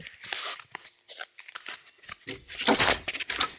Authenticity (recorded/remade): recorded